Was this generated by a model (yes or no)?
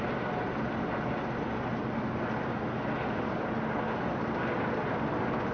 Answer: no